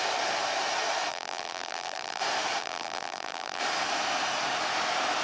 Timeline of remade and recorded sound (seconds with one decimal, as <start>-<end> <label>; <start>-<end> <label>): 0.0-1.1 recorded; 1.1-2.2 remade; 2.2-2.6 recorded; 2.6-3.6 remade; 3.6-5.2 recorded